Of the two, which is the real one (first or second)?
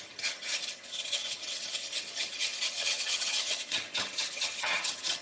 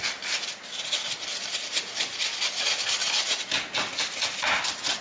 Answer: second